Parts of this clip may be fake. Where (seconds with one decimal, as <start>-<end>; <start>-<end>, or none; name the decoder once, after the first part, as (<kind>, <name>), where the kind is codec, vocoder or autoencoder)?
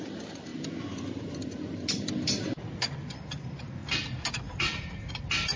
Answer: 0.5-1.2 (vocoder, BigVGAN v2)